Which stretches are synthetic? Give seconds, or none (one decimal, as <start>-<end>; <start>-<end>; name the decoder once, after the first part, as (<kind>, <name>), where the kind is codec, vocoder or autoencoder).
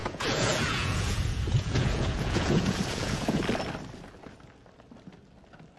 0.0-3.4 (vocoder, Vocos)